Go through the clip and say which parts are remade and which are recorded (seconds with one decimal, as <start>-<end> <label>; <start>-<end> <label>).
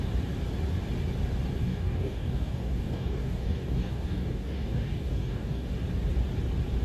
0.0-1.6 recorded; 1.6-5.7 remade; 5.7-6.8 recorded